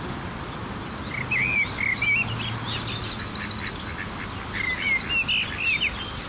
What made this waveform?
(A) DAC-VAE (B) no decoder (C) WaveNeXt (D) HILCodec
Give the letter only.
B